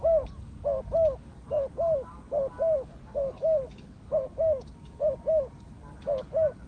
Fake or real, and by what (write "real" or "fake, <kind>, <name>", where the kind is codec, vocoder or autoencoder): fake, codec, DAC